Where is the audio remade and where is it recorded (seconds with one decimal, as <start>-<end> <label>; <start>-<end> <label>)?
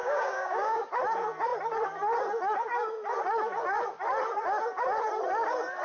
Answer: 0.0-0.9 remade; 0.9-5.8 recorded